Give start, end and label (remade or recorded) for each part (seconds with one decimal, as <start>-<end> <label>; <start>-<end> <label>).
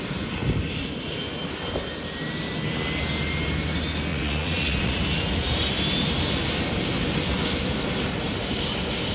0.0-4.1 recorded; 4.1-5.0 remade; 5.0-9.1 recorded